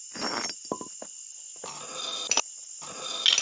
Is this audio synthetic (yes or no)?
no